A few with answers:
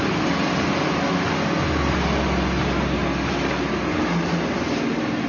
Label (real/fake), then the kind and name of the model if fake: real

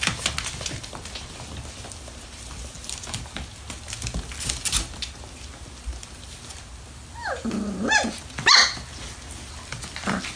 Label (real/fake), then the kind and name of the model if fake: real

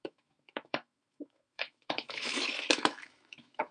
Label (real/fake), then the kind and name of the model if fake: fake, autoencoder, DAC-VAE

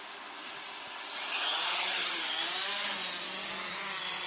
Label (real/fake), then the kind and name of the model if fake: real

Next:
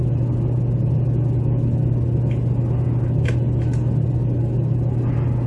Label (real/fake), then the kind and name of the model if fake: real